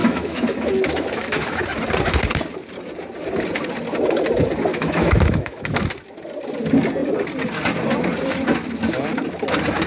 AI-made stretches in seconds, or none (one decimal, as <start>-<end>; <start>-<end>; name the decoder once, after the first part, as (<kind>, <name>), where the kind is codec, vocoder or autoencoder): 0.0-1.6 (autoencoder, DAC-VAE); 4.7-5.9